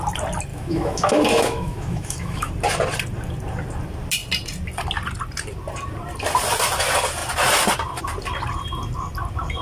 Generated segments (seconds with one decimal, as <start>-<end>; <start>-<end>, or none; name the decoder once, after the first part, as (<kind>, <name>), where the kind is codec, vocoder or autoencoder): 0.5-2.5 (autoencoder, DAC-VAE)